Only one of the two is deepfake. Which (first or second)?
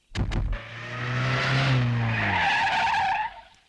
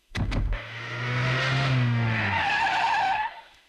second